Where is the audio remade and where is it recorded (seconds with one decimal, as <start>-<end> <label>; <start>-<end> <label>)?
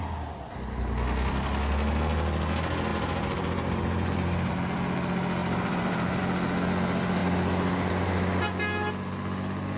0.0-2.9 recorded; 2.9-4.5 remade; 4.5-5.4 recorded; 5.4-6.2 remade; 6.2-9.8 recorded